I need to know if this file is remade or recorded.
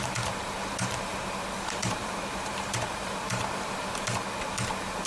remade